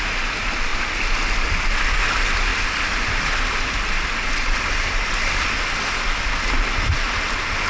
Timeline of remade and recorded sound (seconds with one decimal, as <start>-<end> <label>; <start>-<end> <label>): 0.0-7.7 recorded